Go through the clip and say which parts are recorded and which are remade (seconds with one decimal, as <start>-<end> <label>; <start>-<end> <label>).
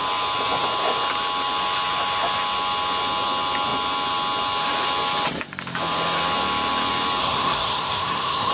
0.0-7.2 recorded; 7.2-8.5 remade